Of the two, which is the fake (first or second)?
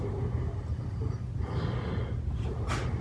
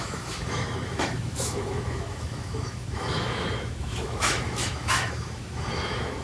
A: second